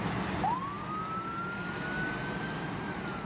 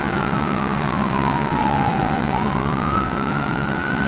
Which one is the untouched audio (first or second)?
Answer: first